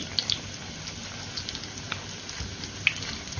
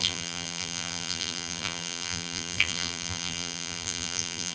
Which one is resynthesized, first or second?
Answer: second